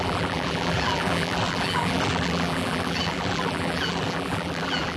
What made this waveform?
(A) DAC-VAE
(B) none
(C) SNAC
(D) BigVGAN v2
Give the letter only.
D